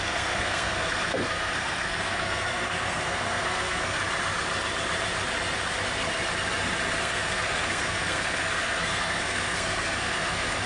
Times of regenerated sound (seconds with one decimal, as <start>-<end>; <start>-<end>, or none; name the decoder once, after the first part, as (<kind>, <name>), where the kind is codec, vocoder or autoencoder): 0.0-4.0 (codec, SNAC); 7.0-10.7